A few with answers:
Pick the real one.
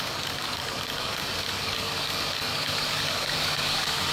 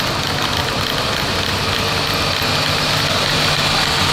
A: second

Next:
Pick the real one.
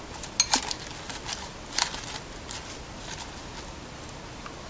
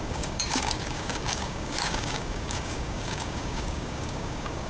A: first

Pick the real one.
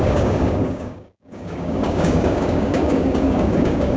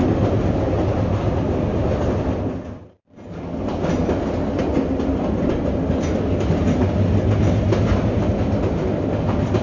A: second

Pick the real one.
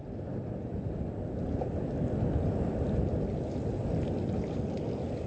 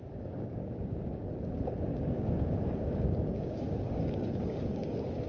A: first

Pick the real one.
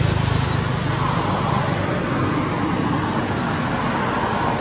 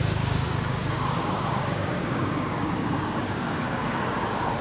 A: first